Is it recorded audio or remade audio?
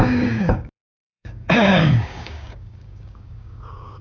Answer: remade